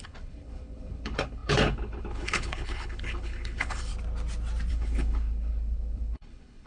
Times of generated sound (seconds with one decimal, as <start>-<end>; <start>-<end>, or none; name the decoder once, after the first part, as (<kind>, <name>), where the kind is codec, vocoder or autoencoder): 0.0-3.9 (codec, HILCodec); 4.7-6.7